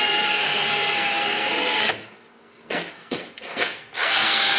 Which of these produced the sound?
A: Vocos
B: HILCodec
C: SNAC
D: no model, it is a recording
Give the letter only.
C